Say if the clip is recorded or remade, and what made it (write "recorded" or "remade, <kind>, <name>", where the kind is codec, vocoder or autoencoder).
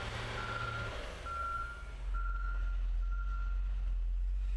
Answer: recorded